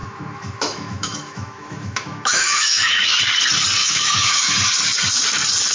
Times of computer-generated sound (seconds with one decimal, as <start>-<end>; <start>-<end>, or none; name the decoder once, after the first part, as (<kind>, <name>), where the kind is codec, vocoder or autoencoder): 0.0-3.2 (autoencoder, DAC-VAE); 3.8-4.5